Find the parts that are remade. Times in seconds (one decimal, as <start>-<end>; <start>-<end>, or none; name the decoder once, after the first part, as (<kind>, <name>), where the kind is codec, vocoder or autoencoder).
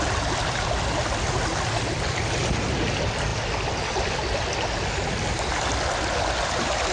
none